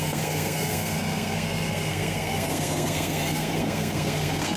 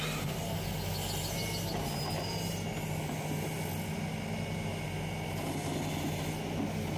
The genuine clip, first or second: second